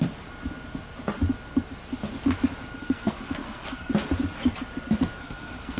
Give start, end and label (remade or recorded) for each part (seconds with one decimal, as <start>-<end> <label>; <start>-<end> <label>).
0.0-2.8 recorded; 2.8-3.9 remade; 3.9-5.2 recorded; 5.2-5.8 remade

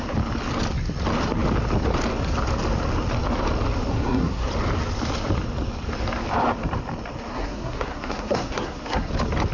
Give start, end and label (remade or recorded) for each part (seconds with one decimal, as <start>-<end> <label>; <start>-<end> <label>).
0.0-3.9 recorded; 3.9-4.5 remade; 4.5-7.3 recorded; 7.3-9.1 remade; 9.1-9.5 recorded

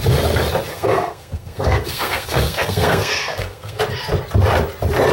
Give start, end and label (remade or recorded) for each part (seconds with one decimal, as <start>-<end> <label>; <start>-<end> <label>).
0.0-0.7 recorded; 0.7-3.8 remade; 3.8-5.1 recorded

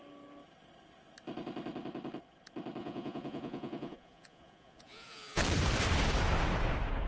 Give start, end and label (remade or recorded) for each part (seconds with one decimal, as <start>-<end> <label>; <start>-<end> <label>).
0.0-2.8 recorded; 2.8-5.4 remade; 5.4-7.1 recorded

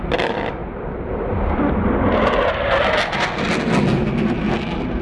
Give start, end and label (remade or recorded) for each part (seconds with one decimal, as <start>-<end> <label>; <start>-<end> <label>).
0.0-5.0 recorded